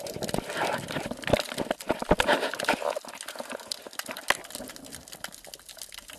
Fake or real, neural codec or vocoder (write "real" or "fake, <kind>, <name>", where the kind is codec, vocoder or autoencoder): real